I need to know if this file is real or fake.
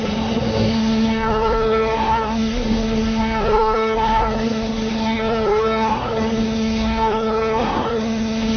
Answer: fake